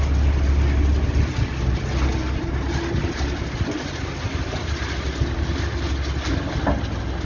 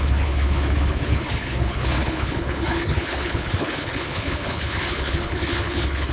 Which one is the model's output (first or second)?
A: second